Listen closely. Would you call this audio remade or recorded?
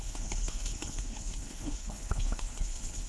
remade